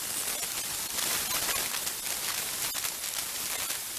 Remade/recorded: recorded